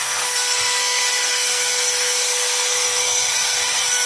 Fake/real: fake